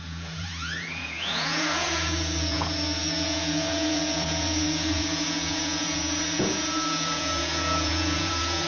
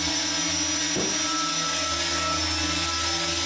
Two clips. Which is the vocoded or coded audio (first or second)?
first